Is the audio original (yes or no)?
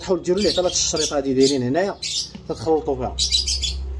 yes